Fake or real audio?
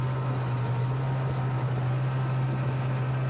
real